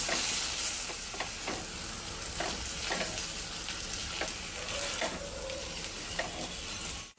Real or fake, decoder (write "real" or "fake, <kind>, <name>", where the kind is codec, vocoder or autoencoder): real